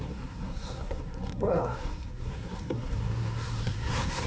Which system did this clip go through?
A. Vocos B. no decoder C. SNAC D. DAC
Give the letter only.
C